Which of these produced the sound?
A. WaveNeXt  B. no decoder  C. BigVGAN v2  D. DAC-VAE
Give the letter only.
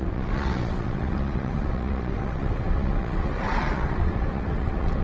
A